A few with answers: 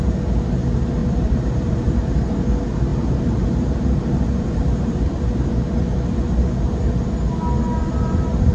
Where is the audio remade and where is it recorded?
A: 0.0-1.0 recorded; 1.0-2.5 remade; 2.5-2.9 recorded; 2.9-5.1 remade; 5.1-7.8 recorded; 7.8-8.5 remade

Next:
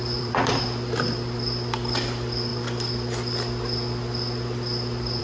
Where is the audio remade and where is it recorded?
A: 0.0-0.6 remade; 0.6-5.2 recorded

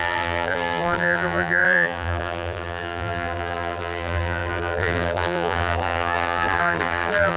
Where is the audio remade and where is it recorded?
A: 0.0-7.4 remade

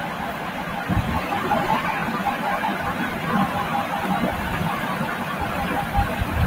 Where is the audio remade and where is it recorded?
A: 0.0-3.7 remade; 3.7-6.5 recorded

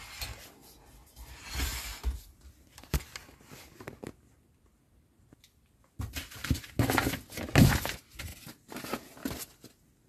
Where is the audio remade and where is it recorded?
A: 0.0-1.7 recorded; 1.7-6.7 remade; 6.7-10.1 recorded

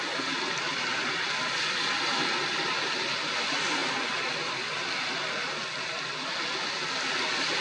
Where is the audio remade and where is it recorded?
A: 0.0-7.6 recorded

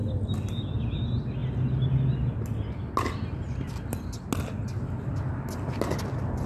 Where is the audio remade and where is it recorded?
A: 0.0-6.5 recorded

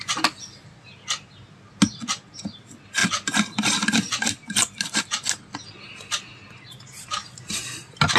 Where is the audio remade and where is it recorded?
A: 0.0-8.2 recorded